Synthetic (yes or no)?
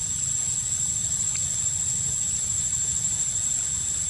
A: no